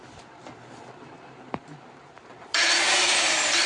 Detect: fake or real fake